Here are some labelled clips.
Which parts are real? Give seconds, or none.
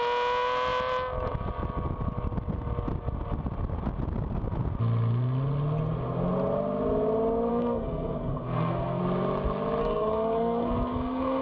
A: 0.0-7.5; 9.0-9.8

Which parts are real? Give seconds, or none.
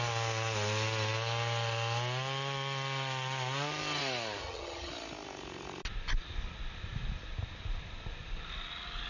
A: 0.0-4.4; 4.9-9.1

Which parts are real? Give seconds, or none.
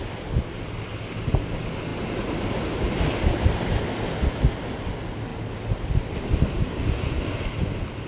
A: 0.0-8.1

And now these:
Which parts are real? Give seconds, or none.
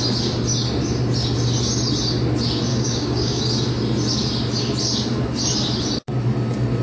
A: 0.0-2.7; 3.4-6.8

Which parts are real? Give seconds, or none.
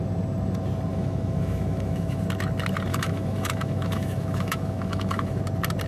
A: 0.0-0.9; 2.2-2.9; 5.4-5.9